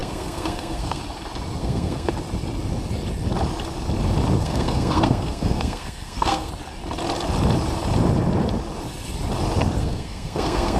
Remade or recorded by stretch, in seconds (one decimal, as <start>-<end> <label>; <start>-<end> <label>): 0.0-1.0 remade; 1.0-1.6 recorded; 1.6-2.1 remade; 2.1-4.4 recorded; 4.4-6.5 remade; 6.5-9.8 recorded; 9.8-10.8 remade

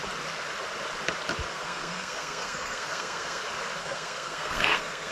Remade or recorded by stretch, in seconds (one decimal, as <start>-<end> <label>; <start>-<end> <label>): 0.0-1.5 recorded; 1.5-3.4 remade; 3.4-3.8 recorded; 3.8-5.1 remade

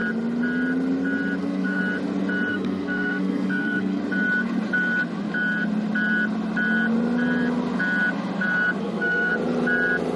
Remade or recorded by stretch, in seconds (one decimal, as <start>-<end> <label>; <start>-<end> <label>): 0.0-1.4 recorded; 1.4-1.8 remade; 1.8-2.5 recorded; 2.5-4.0 remade; 4.0-8.8 recorded; 8.8-9.3 remade; 9.3-10.2 recorded

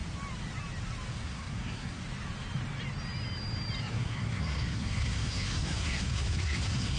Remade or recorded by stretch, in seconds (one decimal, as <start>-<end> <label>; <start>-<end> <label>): 0.0-1.1 recorded; 1.1-2.0 remade; 2.0-3.8 recorded; 3.8-7.0 remade

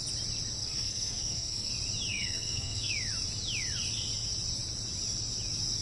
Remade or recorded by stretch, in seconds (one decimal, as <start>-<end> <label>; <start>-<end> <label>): 0.0-0.6 recorded; 0.6-1.7 remade; 1.7-2.1 recorded; 2.1-2.9 remade; 2.9-5.8 recorded

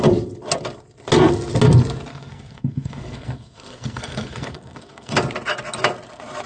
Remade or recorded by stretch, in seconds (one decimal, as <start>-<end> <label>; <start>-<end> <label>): 0.0-2.1 recorded; 2.1-5.1 remade; 5.1-6.5 recorded

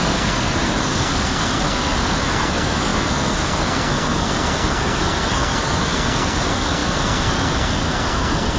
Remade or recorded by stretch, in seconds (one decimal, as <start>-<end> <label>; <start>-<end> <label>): 0.0-8.6 remade

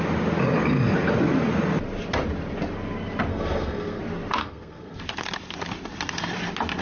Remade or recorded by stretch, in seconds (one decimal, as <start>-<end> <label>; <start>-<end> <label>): 0.0-3.3 recorded; 3.3-4.0 remade; 4.0-4.4 recorded; 4.4-5.0 remade; 5.0-6.8 recorded